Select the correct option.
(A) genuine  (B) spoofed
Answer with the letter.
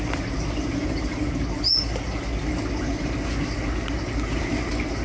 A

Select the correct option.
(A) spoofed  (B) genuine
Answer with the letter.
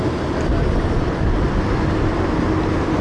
B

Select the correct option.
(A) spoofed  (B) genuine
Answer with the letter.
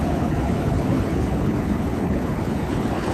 A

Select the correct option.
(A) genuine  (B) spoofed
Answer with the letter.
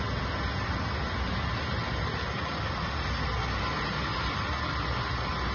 A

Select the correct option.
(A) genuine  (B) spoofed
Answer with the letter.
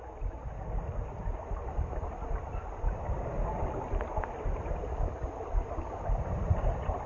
A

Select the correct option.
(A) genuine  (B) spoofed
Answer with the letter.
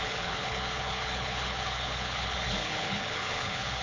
B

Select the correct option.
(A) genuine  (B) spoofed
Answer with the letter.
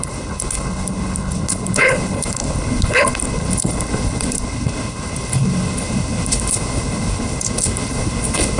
B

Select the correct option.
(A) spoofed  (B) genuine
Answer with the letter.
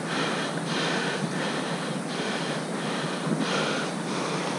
B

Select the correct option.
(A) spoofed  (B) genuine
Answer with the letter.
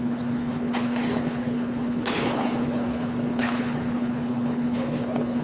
A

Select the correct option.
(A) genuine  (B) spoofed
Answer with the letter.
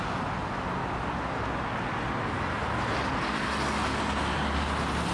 A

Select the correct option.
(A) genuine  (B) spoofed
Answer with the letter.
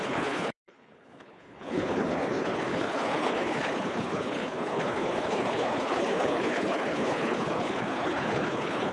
B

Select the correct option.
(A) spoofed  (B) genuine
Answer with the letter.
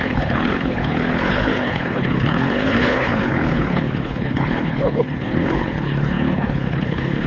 A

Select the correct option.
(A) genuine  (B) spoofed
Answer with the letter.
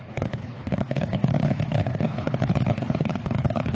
B